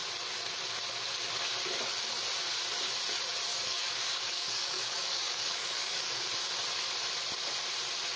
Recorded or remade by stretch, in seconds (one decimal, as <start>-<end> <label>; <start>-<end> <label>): 0.0-3.5 recorded; 3.5-6.3 remade; 6.3-8.2 recorded